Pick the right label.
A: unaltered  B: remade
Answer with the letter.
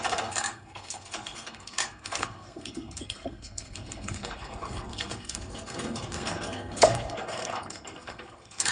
B